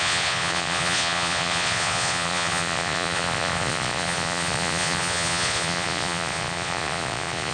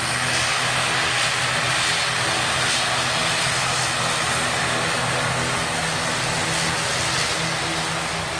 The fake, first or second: first